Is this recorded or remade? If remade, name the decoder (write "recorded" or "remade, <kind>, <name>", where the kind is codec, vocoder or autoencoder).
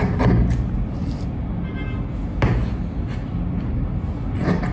recorded